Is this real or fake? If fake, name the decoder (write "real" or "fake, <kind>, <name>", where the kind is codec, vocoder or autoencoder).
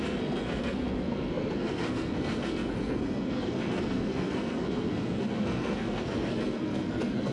fake, codec, SNAC